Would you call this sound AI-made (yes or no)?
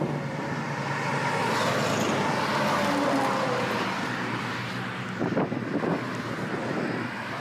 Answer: no